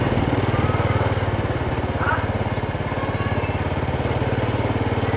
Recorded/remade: recorded